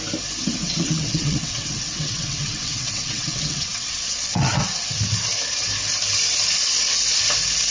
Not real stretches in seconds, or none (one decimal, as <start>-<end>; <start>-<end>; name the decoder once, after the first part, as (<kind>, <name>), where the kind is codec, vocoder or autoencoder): 0.6-4.6 (vocoder, WaveNeXt)